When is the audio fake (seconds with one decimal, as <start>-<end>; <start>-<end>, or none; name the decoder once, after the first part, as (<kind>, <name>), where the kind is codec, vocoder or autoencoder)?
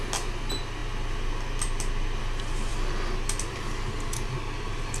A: none